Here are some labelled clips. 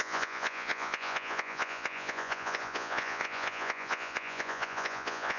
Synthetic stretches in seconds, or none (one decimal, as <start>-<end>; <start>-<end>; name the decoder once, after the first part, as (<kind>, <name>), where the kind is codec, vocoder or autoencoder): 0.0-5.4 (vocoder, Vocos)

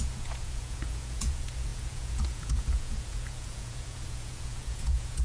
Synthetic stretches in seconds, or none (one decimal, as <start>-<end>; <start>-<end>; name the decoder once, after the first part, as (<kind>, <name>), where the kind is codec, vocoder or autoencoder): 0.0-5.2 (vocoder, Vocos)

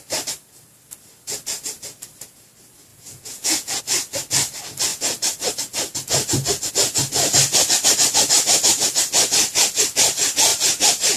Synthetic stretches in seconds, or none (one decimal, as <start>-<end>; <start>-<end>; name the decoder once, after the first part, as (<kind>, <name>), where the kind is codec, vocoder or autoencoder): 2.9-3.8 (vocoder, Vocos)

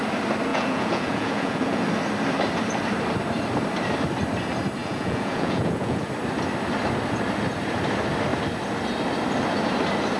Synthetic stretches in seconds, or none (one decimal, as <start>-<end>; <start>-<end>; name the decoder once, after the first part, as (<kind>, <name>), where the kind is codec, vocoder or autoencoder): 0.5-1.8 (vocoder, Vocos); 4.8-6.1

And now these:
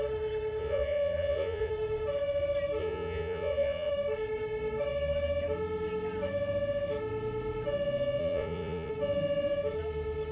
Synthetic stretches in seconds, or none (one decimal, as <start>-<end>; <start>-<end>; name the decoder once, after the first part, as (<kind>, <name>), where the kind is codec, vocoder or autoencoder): 0.6-1.7 (vocoder, Vocos); 2.8-3.9; 8.2-8.9

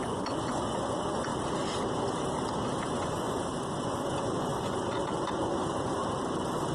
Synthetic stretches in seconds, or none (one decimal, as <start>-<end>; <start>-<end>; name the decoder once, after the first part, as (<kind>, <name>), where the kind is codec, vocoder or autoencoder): 0.0-1.3 (vocoder, Vocos); 2.9-6.0